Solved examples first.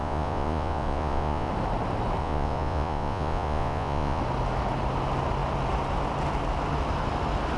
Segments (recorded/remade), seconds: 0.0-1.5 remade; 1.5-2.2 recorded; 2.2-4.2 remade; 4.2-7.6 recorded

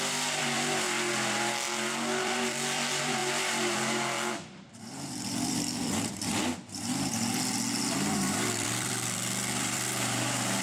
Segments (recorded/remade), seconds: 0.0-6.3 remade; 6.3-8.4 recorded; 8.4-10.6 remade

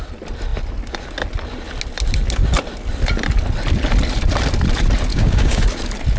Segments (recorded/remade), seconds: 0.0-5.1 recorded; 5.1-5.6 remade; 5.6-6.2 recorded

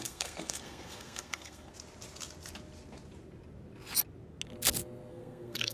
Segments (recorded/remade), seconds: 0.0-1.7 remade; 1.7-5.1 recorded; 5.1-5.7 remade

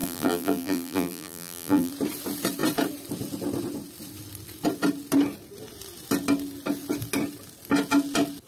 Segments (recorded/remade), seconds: 0.0-1.9 remade; 1.9-8.5 recorded

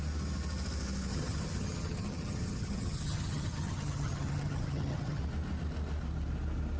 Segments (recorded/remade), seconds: 0.0-1.1 recorded; 1.1-5.2 remade; 5.2-6.8 recorded